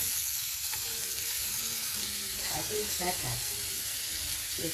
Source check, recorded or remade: remade